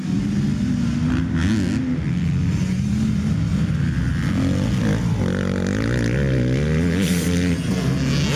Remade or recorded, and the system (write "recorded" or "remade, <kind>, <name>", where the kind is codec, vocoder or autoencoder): recorded